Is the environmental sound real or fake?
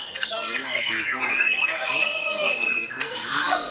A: fake